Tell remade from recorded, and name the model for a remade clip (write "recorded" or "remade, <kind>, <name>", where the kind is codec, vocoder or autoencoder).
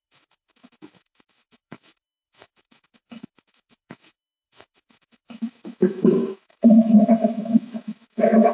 remade, autoencoder, DAC-VAE